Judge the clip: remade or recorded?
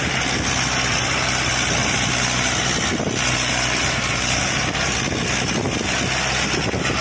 recorded